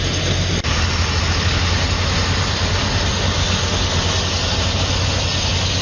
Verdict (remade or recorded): recorded